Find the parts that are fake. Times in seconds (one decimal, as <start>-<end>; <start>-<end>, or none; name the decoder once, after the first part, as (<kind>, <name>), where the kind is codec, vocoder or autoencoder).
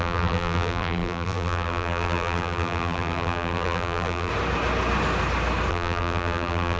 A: 0.0-4.3 (vocoder, BigVGAN v2); 5.7-6.8